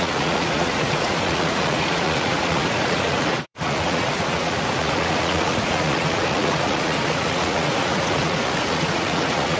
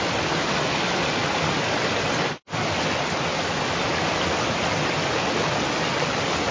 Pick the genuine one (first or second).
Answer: second